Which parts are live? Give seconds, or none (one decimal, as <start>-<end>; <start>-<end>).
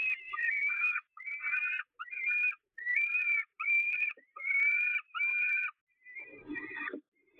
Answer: 0.5-2.9; 5.3-7.4